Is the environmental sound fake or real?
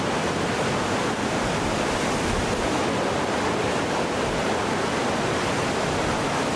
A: real